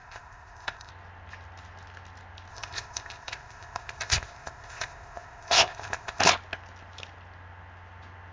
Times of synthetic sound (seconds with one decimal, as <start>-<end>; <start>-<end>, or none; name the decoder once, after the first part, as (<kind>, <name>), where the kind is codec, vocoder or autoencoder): 0.0-0.9 (codec, ZipCodec); 2.5-6.2